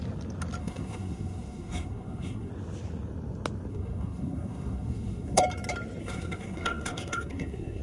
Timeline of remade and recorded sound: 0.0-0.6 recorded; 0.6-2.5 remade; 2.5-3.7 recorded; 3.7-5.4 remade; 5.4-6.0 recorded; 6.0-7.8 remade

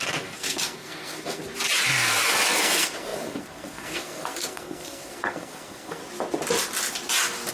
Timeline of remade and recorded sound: 0.0-1.4 remade; 1.4-2.6 recorded; 2.6-6.0 remade; 6.0-7.5 recorded

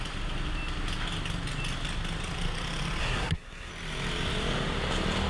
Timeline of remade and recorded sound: 0.0-3.0 recorded; 3.0-3.7 remade; 3.7-5.3 recorded